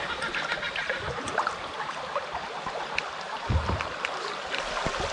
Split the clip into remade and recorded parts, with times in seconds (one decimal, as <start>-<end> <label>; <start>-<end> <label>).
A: 0.0-5.1 recorded